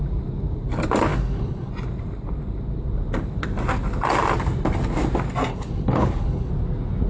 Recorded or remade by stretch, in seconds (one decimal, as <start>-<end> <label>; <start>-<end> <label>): 0.0-1.1 recorded; 1.1-1.7 remade; 1.7-5.5 recorded; 5.5-6.5 remade; 6.5-7.1 recorded